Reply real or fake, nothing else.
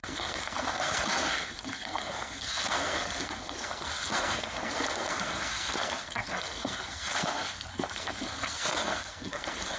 fake